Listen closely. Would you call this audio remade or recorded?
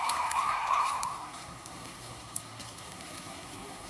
remade